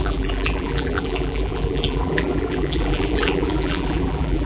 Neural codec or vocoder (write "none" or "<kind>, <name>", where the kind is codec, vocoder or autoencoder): vocoder, BigVGAN v2